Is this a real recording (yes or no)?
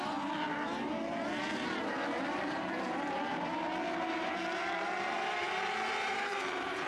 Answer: no